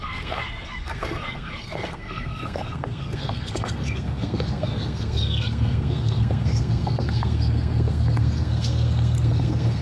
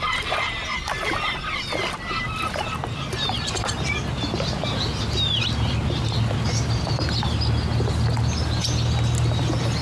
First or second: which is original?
second